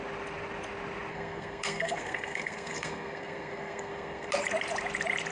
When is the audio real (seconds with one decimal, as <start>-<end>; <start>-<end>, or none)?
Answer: 0.0-1.1; 4.3-5.3